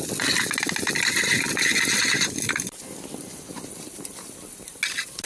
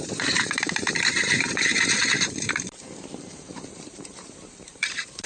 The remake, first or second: second